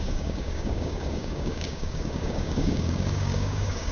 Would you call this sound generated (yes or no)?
yes